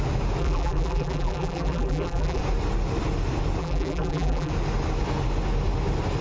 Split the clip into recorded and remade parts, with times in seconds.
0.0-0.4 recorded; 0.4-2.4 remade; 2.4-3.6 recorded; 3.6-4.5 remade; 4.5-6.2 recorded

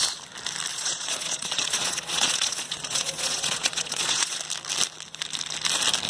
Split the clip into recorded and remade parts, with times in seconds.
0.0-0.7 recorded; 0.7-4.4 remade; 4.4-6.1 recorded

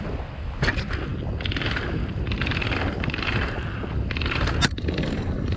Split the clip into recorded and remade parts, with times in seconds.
0.0-5.6 recorded